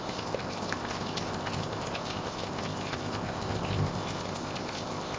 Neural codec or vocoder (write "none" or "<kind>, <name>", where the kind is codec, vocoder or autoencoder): codec, ZipCodec